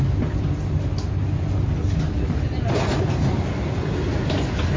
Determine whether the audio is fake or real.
real